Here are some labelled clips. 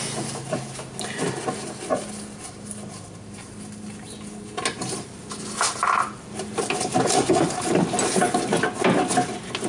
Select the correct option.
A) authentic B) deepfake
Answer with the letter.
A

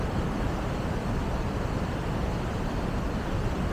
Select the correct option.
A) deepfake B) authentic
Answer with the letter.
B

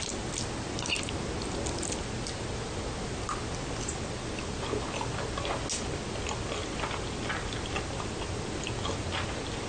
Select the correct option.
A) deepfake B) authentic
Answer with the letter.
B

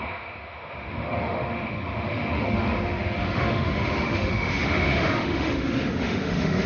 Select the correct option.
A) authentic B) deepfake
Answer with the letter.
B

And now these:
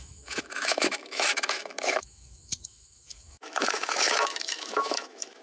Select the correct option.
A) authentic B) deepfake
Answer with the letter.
B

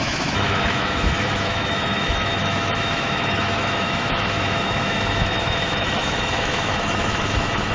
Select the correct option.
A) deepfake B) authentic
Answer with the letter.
A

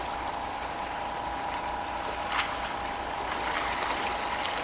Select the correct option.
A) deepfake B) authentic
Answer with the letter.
B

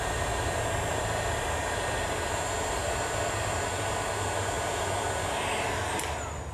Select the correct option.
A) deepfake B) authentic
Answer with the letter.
B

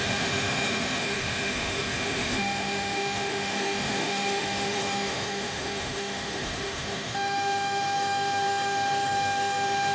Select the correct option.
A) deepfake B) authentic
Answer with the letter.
A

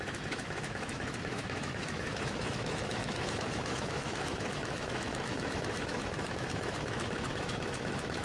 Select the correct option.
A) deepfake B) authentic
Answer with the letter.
A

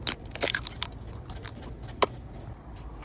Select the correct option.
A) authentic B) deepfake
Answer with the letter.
A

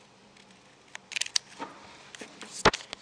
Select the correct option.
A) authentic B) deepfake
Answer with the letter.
A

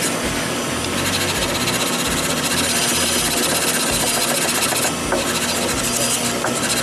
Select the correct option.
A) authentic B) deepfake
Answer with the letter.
A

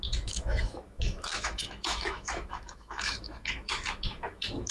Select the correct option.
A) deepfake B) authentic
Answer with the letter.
A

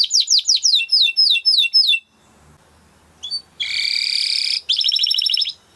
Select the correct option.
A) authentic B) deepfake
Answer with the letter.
A